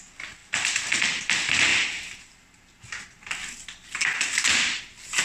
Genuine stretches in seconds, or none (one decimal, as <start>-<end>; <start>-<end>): 0.0-5.2